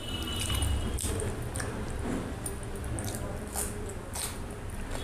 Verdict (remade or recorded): recorded